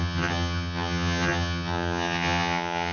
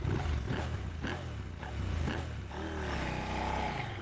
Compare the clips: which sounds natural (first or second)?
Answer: second